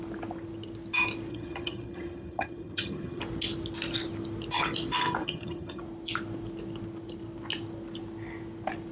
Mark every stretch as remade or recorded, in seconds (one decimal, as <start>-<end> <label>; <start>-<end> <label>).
0.0-1.3 recorded; 1.3-3.2 remade; 3.2-5.2 recorded; 5.2-5.8 remade; 5.8-8.9 recorded